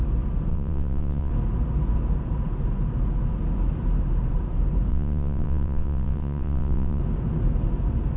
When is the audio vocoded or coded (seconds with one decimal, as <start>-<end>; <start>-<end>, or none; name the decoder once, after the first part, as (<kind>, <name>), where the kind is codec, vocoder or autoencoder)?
0.5-1.3 (vocoder, WaveNeXt); 4.9-7.0